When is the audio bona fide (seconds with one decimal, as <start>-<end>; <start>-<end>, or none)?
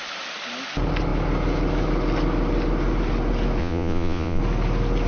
0.0-3.6; 4.4-5.1